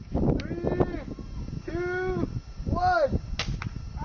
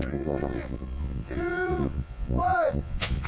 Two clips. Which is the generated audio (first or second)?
second